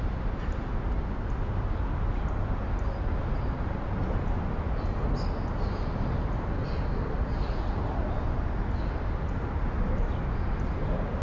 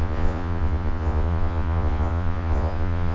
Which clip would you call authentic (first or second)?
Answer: first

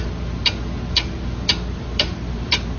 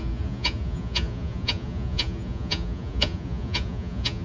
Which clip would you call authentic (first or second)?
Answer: first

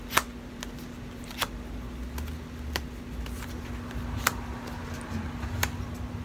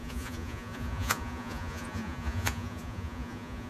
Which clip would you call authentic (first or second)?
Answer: first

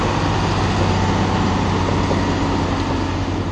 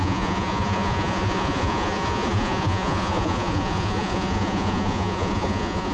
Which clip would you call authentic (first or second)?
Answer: first